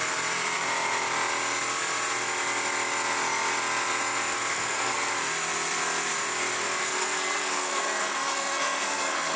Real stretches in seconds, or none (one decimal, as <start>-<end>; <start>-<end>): 0.0-4.5; 5.1-6.8